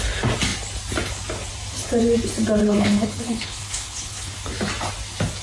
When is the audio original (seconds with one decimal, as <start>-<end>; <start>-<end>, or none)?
0.0-2.6; 4.3-5.4